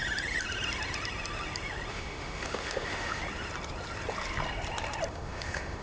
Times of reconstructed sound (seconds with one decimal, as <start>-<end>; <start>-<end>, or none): 1.9-3.2; 5.1-5.8